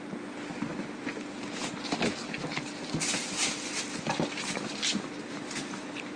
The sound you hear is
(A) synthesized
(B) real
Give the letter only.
B